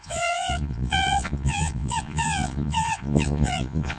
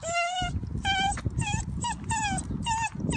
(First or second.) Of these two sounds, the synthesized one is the first